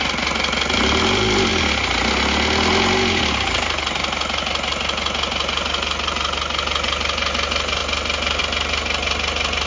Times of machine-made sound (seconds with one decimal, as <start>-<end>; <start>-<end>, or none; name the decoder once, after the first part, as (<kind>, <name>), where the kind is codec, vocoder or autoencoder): none